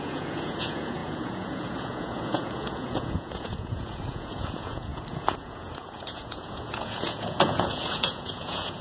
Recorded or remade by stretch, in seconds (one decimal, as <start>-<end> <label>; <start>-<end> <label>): 0.0-8.8 remade